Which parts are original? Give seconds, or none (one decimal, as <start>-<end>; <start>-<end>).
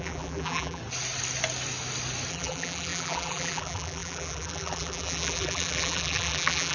0.8-2.3